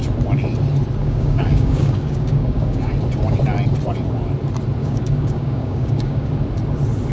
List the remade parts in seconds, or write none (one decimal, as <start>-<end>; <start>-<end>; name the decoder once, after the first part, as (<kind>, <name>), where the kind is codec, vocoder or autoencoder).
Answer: 1.0-2.9 (codec, DAC); 4.8-6.3